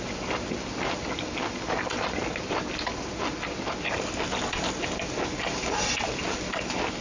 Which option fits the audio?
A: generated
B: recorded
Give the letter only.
B